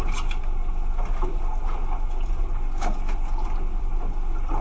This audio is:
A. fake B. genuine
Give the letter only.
B